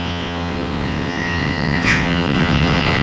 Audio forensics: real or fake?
fake